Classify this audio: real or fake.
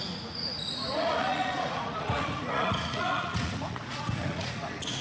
fake